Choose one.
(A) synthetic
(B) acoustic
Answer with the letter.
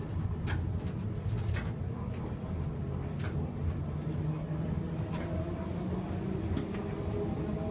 B